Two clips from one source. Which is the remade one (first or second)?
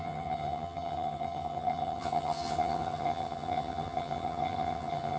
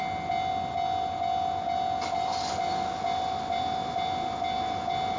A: first